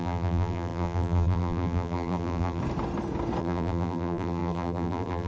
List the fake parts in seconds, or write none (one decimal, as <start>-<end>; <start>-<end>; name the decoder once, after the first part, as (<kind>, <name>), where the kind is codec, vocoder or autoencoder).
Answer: 0.0-2.6 (vocoder, BigVGAN v2); 3.4-5.3